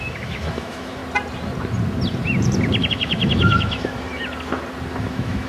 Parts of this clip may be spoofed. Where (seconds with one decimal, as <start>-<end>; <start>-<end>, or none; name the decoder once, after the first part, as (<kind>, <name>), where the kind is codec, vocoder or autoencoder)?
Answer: 0.0-1.0 (autoencoder, DAC-VAE); 2.9-4.1; 5.0-5.5